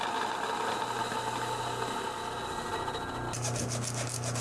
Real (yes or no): yes